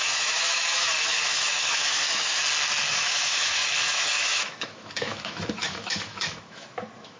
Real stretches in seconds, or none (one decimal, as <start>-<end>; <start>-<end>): 2.4-2.9